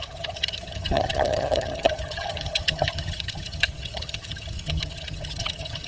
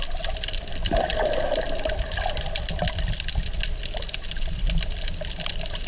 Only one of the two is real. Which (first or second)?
second